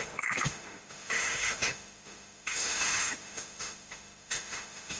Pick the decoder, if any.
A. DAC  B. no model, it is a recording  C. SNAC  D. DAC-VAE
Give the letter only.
D